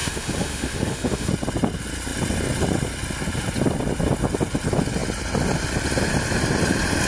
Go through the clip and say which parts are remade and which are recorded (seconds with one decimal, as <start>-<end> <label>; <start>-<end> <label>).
0.0-1.3 remade; 1.3-7.1 recorded